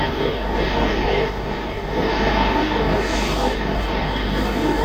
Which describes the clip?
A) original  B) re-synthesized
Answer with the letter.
B